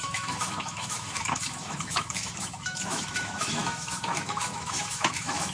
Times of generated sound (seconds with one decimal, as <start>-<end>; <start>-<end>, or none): 0.0-5.5